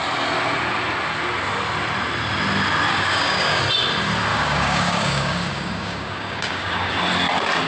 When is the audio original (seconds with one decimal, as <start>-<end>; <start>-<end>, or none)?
0.0-2.9; 3.6-4.3; 6.9-7.7